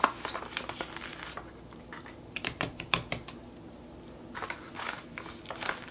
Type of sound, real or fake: real